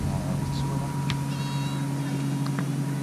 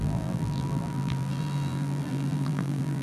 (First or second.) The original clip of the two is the first